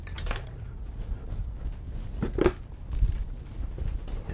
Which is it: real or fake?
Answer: real